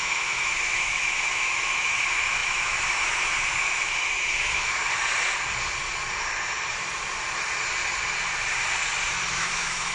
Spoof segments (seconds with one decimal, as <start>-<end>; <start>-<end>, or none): 0.0-4.8; 9.3-9.9